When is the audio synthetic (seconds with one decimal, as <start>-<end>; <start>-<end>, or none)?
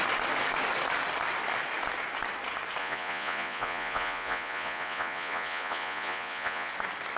2.8-6.7